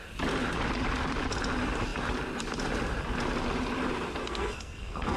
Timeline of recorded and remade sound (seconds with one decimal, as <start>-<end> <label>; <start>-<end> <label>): 0.0-4.2 recorded; 4.2-5.2 remade